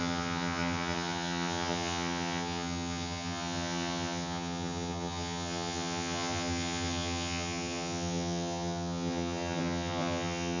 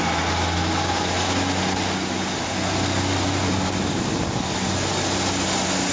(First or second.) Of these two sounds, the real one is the second